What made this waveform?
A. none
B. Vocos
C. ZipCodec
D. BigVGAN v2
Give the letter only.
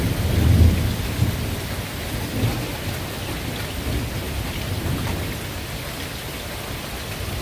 A